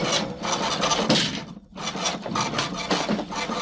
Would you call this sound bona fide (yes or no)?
yes